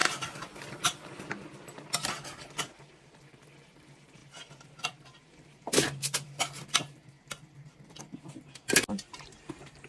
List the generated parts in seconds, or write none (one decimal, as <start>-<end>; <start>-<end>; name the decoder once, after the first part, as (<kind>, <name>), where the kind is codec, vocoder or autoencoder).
4.2-8.0 (vocoder, BigVGAN v2)